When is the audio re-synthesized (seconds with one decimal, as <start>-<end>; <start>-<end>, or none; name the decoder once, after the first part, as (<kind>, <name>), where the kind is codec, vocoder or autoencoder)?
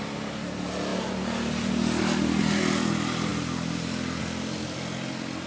none